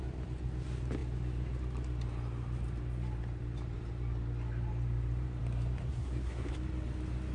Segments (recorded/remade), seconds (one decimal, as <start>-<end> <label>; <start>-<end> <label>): 0.0-5.9 recorded; 5.9-6.5 remade; 6.5-7.3 recorded